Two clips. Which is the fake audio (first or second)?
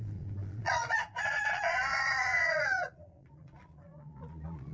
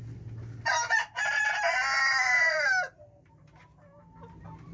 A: first